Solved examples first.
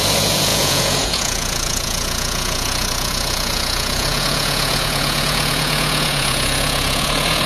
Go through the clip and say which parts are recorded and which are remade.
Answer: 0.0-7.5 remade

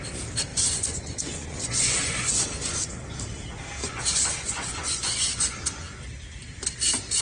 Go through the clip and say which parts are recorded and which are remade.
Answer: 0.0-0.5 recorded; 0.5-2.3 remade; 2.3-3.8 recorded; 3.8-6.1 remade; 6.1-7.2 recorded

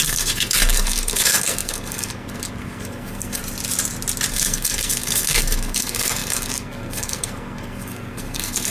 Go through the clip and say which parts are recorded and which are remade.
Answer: 0.0-3.4 remade; 3.4-4.3 recorded; 4.3-8.7 remade

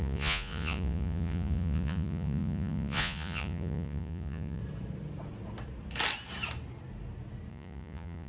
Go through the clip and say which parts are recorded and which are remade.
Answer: 0.0-4.6 remade; 4.6-7.5 recorded; 7.5-8.3 remade